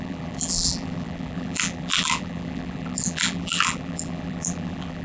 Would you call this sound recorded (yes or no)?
no